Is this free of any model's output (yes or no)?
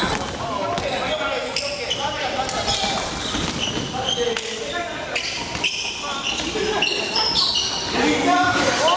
yes